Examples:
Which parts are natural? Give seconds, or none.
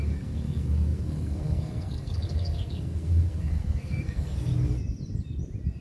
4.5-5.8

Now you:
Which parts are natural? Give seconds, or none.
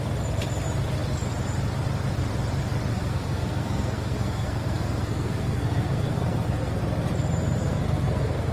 0.0-2.9; 6.8-7.6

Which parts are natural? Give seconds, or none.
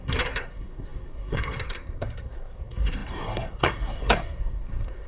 none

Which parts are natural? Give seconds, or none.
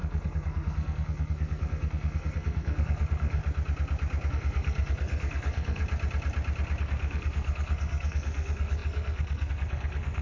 3.4-4.3; 5.8-6.8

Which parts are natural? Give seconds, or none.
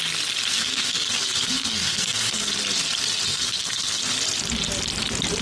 0.0-0.5; 2.5-3.3; 4.0-5.4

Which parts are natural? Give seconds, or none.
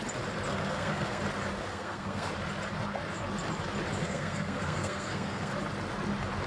0.0-0.5; 1.2-1.7; 2.3-4.0; 5.5-6.5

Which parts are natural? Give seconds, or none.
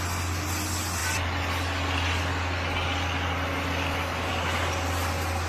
0.0-5.5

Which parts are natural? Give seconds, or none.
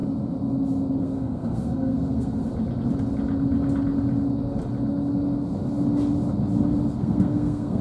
0.0-1.0; 2.4-6.9